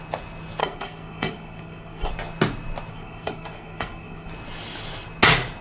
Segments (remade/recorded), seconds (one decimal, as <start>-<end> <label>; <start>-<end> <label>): 0.0-0.6 recorded; 0.6-2.1 remade; 2.1-2.9 recorded; 2.9-4.3 remade; 4.3-5.6 recorded